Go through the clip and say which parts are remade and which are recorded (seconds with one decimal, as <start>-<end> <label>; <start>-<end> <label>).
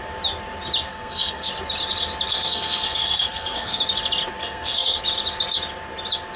0.0-0.9 recorded; 0.9-1.5 remade; 1.5-2.3 recorded; 2.3-3.8 remade; 3.8-4.4 recorded; 4.4-5.0 remade; 5.0-6.4 recorded